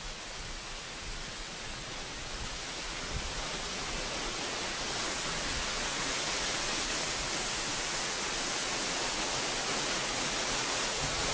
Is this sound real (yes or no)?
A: no